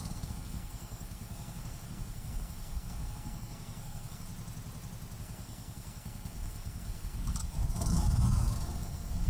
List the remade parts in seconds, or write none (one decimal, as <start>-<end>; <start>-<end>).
0.0-4.3; 5.2-9.3